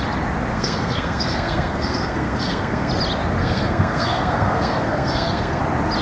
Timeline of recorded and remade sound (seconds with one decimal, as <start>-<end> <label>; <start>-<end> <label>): 0.0-0.5 recorded; 0.5-2.9 remade; 2.9-3.4 recorded; 3.4-5.6 remade; 5.6-6.0 recorded